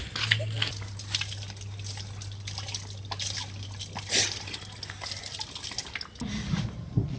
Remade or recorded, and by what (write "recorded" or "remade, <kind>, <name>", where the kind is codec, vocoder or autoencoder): recorded